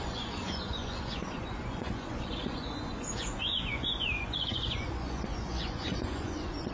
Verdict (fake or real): fake